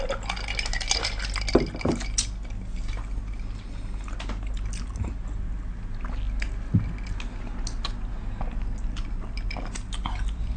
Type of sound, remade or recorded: recorded